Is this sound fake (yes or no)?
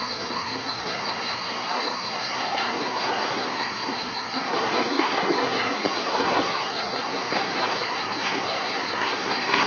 yes